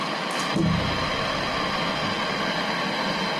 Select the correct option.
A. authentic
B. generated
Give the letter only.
A